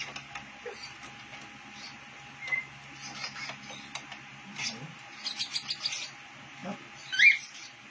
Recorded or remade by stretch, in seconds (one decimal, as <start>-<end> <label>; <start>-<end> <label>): 0.0-7.9 recorded